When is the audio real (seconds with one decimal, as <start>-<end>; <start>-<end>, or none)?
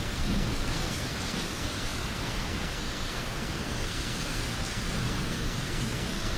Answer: none